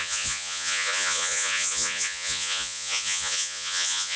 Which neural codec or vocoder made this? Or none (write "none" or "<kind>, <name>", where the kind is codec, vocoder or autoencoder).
vocoder, Vocos